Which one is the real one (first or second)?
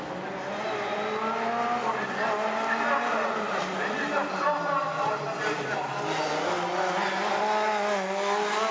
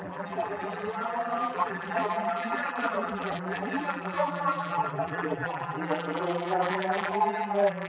first